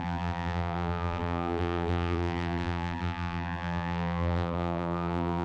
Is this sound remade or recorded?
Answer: remade